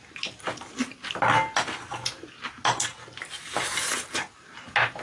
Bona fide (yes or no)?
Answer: yes